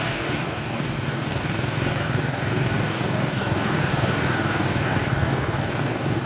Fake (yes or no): yes